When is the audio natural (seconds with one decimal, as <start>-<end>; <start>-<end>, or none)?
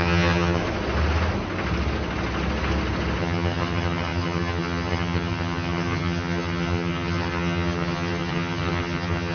0.6-3.2